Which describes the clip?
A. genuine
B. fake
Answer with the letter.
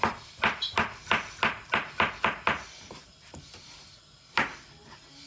A